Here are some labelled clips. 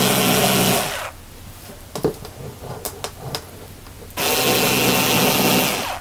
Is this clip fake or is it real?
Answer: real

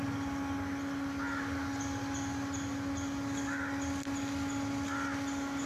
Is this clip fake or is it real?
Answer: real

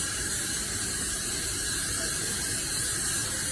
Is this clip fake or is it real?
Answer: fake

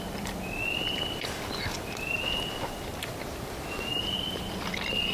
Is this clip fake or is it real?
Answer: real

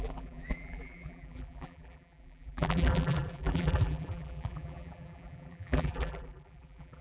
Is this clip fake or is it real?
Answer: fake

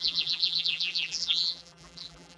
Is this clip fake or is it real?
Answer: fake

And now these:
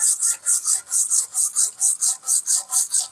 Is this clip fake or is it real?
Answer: real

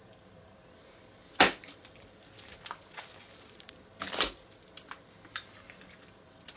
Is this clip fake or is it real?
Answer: real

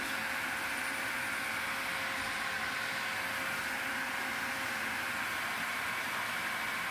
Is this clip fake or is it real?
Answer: real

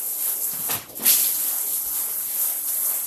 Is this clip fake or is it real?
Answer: fake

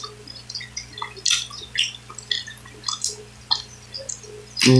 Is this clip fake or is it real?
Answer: real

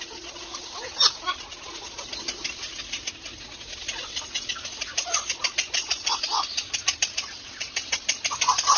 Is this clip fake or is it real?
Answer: real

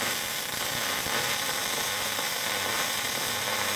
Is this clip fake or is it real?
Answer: fake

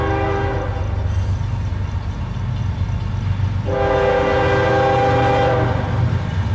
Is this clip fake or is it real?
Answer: real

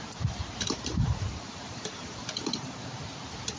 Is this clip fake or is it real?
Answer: fake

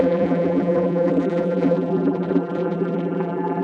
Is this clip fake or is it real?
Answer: fake